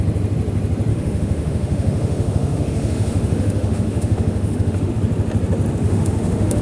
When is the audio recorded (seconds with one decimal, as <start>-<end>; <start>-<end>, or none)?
0.0-0.9; 4.9-5.8